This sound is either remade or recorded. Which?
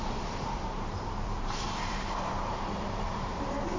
remade